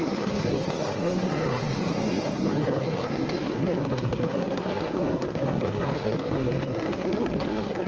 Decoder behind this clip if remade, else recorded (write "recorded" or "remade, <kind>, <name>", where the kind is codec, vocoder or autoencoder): remade, codec, SNAC